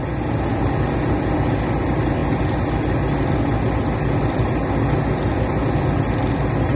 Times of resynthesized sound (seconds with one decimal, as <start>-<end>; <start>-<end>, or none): none